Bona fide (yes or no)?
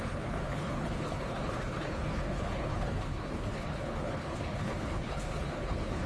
no